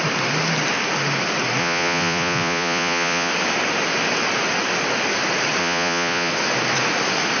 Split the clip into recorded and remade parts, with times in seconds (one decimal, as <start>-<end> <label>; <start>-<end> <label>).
0.0-1.6 recorded; 1.6-3.3 remade; 3.3-5.6 recorded; 5.6-6.3 remade; 6.3-7.4 recorded